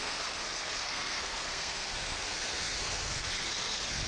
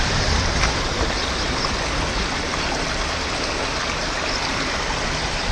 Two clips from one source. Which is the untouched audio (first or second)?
second